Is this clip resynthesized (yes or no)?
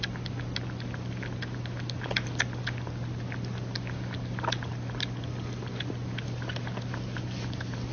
no